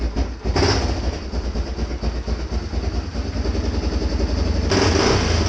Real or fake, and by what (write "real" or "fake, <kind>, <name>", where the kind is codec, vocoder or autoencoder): real